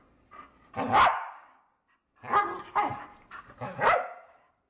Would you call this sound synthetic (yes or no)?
no